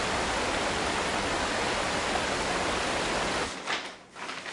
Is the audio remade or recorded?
recorded